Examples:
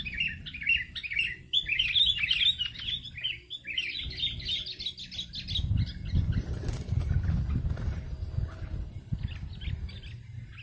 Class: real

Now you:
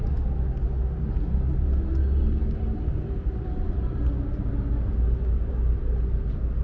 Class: real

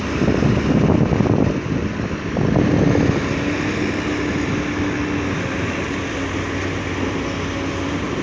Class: real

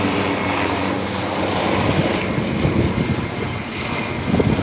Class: real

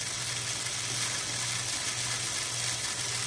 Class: real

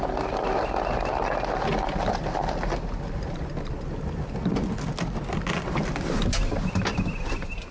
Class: real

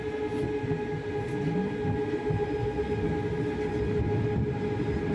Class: real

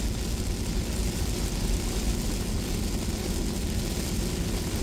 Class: real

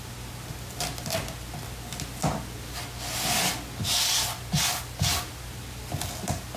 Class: real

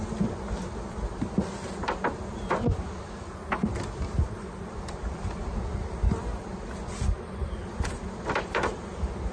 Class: real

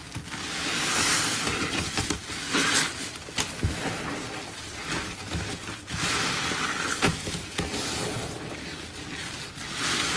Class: real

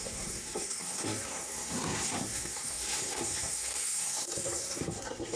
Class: fake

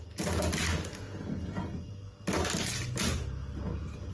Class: real